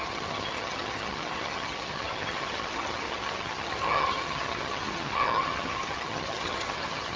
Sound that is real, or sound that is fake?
fake